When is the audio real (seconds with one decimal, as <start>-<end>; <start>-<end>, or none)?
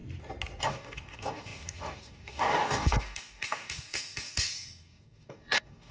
0.0-0.6